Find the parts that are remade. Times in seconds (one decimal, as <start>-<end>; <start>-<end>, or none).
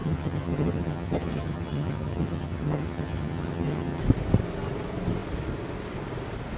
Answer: 0.0-4.0